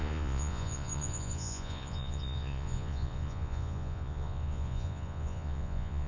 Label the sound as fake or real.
fake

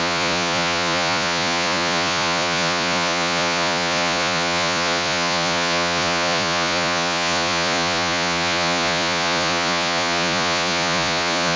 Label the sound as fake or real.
fake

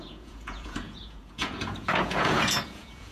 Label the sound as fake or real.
fake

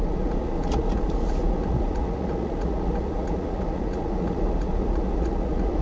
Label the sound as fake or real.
fake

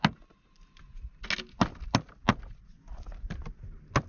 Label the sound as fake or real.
real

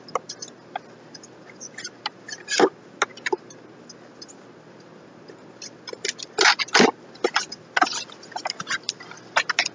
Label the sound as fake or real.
real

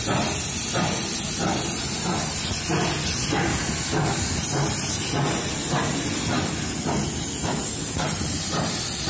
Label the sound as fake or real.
real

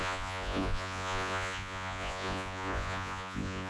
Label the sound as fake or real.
fake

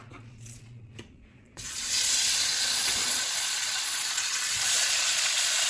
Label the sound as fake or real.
fake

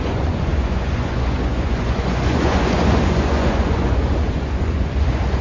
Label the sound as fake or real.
fake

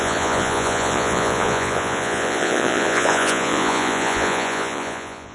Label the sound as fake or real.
fake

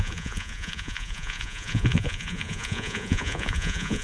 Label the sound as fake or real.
fake